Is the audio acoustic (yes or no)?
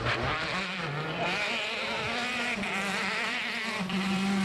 no